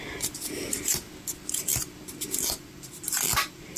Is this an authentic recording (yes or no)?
yes